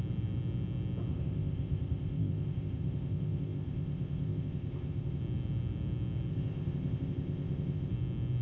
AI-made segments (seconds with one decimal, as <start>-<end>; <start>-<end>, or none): 1.1-5.2; 6.3-7.9